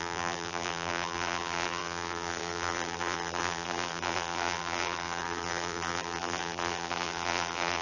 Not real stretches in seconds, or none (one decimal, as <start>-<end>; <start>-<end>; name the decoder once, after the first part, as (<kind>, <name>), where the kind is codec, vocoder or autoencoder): 0.0-7.8 (vocoder, BigVGAN v2)